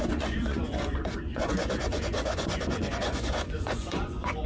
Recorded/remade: remade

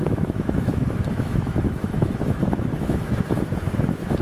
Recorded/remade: remade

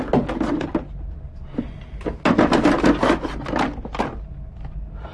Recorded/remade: recorded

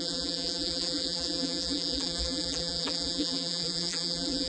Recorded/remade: remade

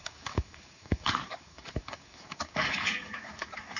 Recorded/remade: remade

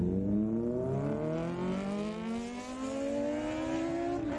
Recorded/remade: recorded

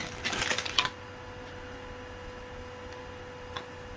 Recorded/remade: recorded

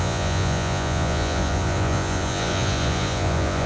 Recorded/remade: remade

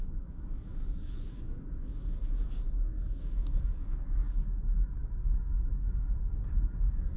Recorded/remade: remade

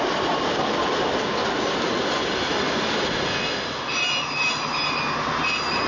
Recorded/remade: recorded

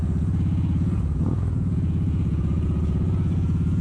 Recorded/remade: remade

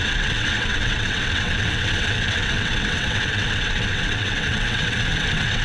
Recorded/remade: remade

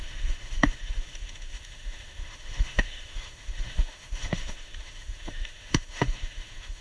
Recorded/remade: remade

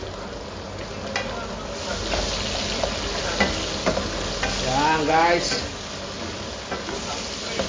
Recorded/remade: recorded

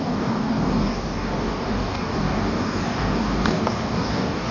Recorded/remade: remade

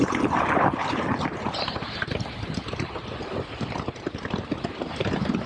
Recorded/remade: recorded